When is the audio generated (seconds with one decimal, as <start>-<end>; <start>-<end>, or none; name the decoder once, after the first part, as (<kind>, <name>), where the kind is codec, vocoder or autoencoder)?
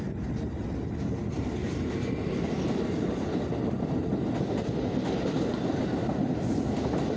none